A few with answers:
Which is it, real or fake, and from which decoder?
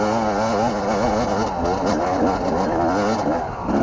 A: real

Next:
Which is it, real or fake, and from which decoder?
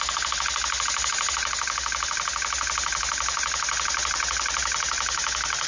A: real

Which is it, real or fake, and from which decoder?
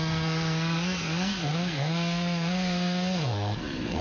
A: fake, codec, SNAC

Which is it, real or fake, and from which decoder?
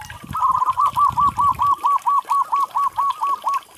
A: real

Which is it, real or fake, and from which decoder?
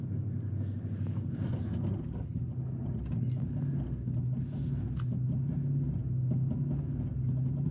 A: real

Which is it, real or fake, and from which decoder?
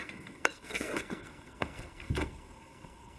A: fake, codec, SNAC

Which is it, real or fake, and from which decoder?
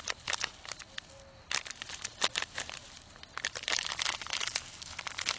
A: real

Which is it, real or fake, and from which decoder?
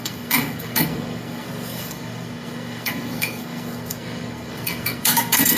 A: fake, codec, SNAC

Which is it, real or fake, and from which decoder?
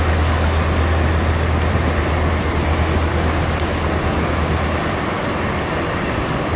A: real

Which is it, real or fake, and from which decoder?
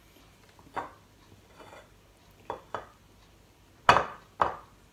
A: real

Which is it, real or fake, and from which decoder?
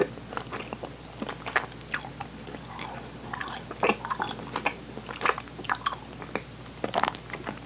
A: real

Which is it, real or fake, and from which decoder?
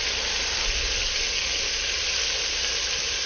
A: real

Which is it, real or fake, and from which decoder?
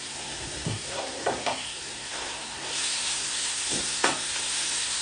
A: fake, codec, SNAC